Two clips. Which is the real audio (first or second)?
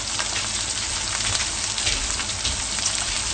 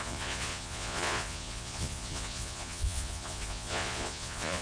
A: first